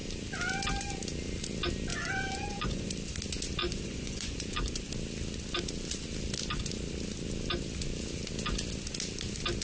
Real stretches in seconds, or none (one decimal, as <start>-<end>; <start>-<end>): 0.0-1.9; 2.9-3.6; 4.9-9.6